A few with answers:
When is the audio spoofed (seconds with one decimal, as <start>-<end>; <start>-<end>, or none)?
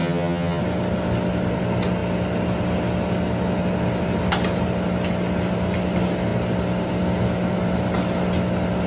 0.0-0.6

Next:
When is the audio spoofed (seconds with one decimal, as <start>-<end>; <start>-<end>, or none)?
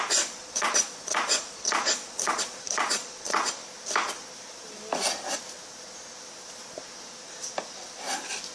0.4-3.5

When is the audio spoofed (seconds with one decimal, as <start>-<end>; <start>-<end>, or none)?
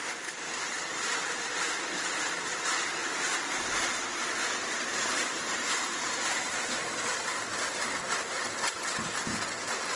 3.0-6.8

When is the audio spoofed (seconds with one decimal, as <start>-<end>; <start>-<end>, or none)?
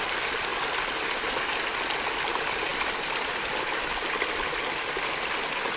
none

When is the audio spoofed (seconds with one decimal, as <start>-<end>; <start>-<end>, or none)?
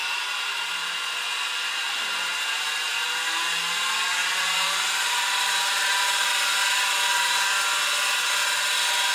0.0-1.0; 4.2-6.6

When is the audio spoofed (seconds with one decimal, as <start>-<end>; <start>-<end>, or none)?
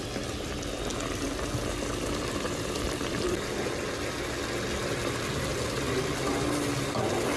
1.9-3.4; 5.5-6.1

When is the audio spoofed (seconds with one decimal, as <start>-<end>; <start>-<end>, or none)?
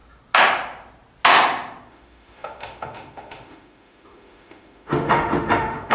1.9-5.9